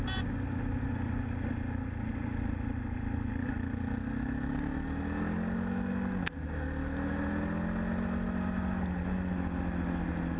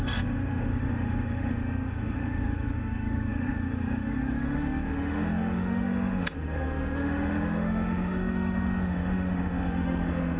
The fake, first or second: second